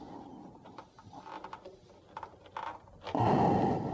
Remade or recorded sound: recorded